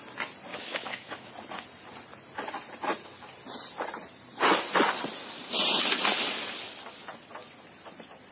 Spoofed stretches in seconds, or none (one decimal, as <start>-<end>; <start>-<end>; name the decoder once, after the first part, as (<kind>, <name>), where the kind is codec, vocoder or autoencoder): 0.5-1.3 (autoencoder, DAC-VAE)